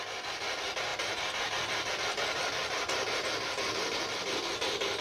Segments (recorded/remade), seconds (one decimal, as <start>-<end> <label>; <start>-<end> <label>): 0.0-2.6 remade; 2.6-5.0 recorded